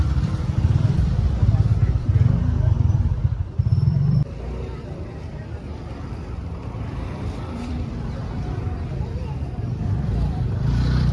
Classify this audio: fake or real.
fake